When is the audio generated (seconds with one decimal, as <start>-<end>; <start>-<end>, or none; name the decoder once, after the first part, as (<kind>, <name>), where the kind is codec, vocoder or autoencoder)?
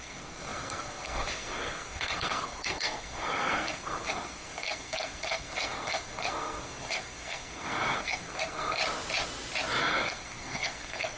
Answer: 0.0-8.8 (codec, SNAC); 9.8-11.2